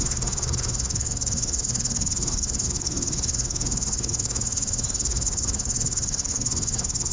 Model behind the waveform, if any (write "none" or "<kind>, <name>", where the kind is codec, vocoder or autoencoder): codec, SNAC